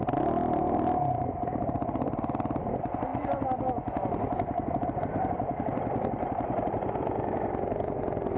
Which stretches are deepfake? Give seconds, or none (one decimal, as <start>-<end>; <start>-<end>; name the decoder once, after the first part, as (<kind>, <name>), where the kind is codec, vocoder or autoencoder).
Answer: none